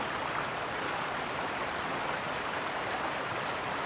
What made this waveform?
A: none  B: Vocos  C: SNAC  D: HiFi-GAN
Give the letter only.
A